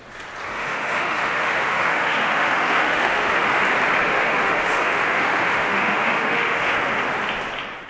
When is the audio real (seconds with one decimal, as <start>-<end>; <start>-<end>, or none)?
0.0-0.5; 3.6-4.0; 6.7-7.9